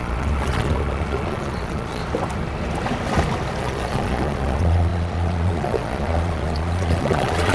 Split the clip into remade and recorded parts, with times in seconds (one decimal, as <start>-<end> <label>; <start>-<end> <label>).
0.0-2.0 remade; 2.0-3.6 recorded; 3.6-7.5 remade